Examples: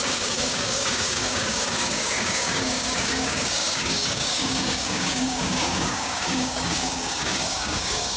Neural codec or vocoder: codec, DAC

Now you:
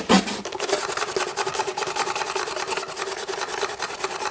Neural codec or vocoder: none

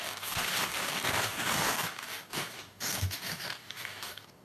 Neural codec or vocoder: codec, DAC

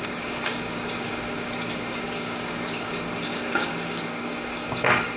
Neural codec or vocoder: codec, DAC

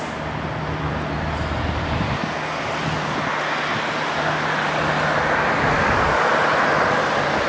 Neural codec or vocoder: none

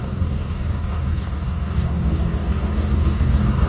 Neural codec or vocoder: codec, DAC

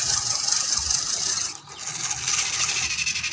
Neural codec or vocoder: none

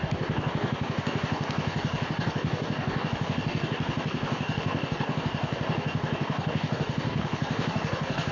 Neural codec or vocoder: codec, DAC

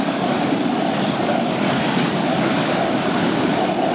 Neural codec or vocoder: codec, DAC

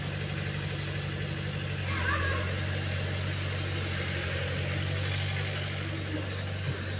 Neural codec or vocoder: none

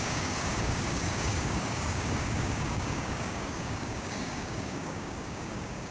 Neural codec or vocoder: codec, DAC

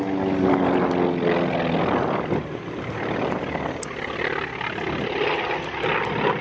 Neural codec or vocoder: none